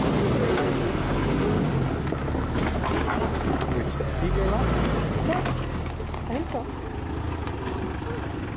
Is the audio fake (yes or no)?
no